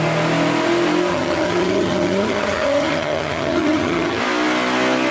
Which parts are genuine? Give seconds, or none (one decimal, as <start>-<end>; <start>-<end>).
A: 0.0-1.1; 4.2-5.1